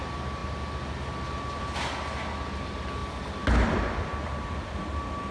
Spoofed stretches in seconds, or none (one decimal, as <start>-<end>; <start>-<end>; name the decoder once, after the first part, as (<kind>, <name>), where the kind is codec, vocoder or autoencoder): none

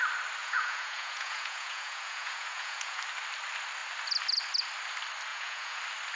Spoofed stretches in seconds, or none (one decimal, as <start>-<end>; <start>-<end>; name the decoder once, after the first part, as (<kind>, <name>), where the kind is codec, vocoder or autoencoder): 0.4-3.0 (vocoder, Vocos); 5.3-5.8